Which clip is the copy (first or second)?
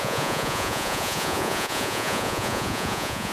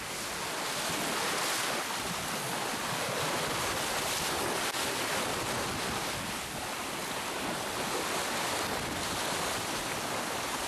first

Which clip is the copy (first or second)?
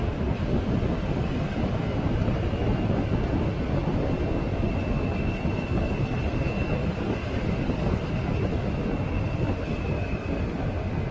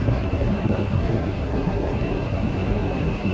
second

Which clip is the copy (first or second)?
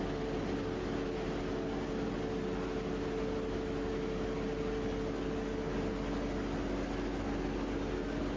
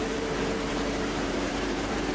second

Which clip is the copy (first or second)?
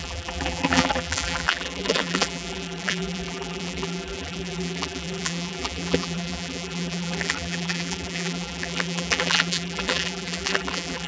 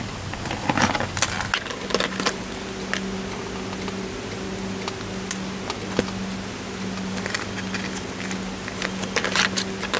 first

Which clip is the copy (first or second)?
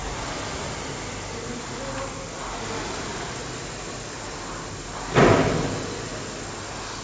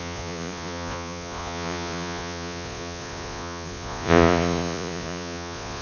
second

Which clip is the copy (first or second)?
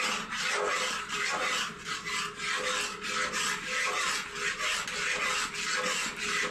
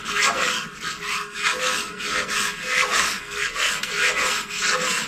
second